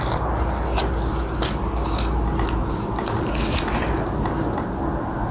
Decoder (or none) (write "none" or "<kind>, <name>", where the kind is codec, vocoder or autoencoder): none